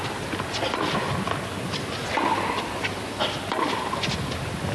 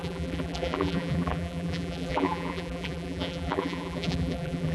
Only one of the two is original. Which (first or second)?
first